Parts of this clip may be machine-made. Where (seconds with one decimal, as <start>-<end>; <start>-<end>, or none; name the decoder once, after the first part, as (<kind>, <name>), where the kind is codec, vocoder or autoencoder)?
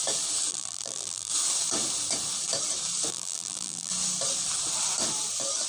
0.5-1.3 (vocoder, BigVGAN v2); 3.1-3.9